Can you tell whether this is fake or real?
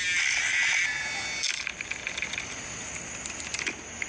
real